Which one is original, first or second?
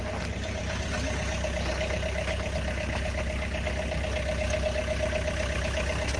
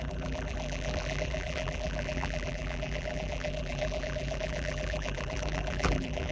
first